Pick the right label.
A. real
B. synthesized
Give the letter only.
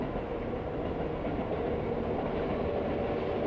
A